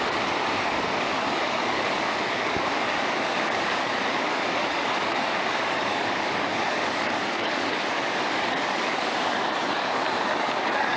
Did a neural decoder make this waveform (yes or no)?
yes